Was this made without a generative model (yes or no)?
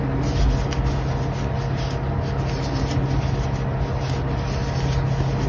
yes